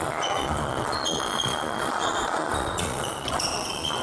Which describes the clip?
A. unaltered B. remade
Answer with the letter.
B